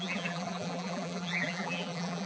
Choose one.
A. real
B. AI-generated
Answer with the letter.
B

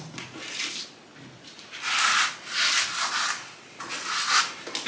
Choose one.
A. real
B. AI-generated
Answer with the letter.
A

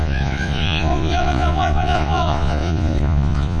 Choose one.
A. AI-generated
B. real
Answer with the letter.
A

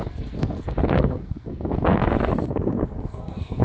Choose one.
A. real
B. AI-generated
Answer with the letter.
B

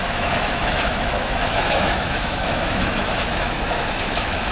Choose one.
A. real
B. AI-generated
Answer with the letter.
B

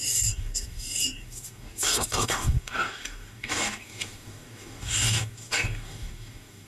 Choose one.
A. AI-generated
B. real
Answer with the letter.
A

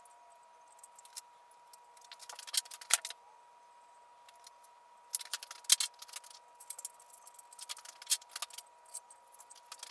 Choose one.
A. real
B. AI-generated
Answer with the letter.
A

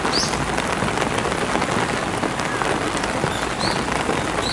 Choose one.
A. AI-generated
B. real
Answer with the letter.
B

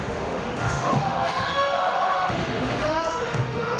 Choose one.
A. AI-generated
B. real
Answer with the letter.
A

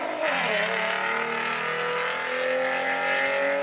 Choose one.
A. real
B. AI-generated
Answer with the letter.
A